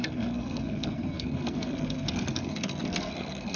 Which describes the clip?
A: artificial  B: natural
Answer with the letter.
A